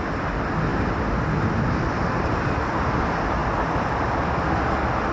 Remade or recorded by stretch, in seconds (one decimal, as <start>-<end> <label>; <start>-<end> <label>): 0.0-0.7 recorded; 0.7-2.7 remade; 2.7-5.1 recorded